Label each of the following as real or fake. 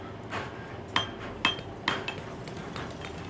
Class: real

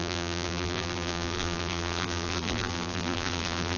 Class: fake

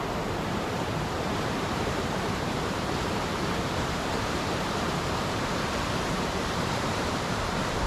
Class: fake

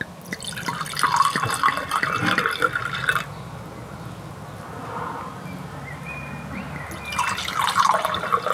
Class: real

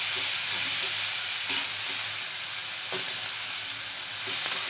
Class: real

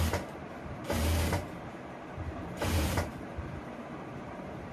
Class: fake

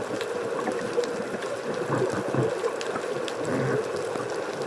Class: real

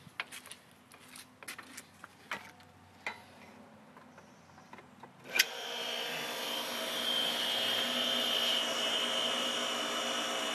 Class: real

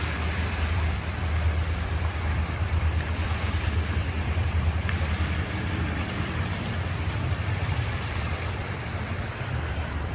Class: fake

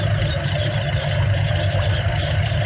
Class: real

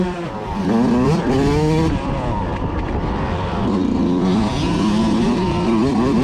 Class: fake